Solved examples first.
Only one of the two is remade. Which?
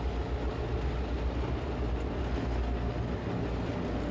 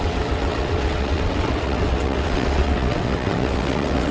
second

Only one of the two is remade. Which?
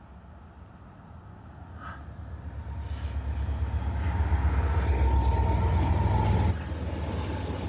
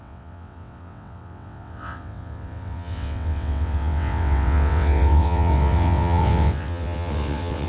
second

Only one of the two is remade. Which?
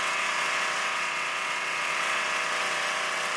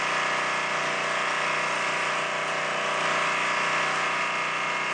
first